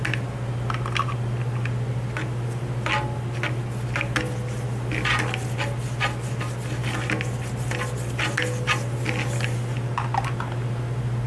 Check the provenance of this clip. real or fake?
real